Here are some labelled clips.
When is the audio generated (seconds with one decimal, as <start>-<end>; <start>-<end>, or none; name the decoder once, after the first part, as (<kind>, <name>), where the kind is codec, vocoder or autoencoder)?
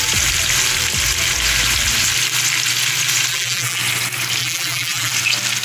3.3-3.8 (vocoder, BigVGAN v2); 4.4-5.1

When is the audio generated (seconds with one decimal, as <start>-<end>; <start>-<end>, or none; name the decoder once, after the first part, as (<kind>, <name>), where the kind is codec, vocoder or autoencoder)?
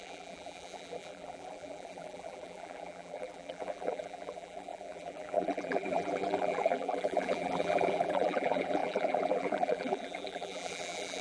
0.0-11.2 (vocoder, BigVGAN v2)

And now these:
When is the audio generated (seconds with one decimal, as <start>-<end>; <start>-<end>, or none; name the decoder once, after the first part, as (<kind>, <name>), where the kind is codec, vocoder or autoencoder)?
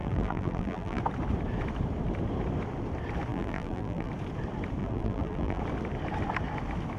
0.0-1.0 (vocoder, BigVGAN v2); 3.3-4.1; 4.8-5.6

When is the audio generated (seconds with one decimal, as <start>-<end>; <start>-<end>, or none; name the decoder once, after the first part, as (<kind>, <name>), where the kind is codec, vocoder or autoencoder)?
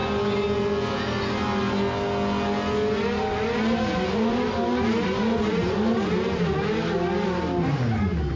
none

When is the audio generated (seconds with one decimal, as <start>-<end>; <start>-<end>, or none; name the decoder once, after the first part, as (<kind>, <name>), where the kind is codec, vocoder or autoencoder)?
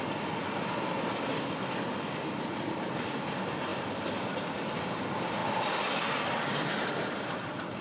3.7-4.7 (vocoder, BigVGAN v2); 5.4-6.9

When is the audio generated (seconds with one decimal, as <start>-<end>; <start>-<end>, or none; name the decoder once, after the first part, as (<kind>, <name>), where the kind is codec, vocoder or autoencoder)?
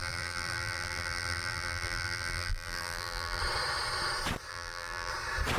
0.0-3.4 (vocoder, BigVGAN v2); 4.5-5.1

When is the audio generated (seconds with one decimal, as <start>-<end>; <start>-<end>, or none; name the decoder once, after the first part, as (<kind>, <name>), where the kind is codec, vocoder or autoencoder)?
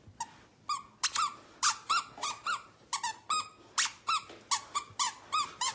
none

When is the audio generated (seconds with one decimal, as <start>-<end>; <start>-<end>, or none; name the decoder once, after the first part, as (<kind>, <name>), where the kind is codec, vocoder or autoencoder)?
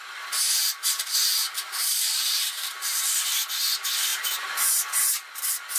1.3-3.0 (vocoder, BigVGAN v2)